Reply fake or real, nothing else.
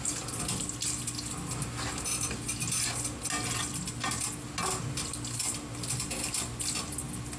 real